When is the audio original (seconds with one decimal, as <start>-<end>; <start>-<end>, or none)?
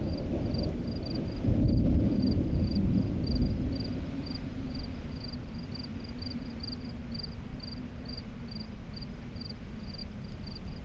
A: 0.0-5.9; 6.6-10.0